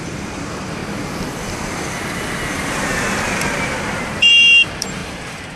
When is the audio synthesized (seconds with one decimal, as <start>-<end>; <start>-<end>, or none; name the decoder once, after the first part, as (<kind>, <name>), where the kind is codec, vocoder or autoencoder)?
0.0-0.8 (vocoder, BigVGAN v2); 3.8-5.6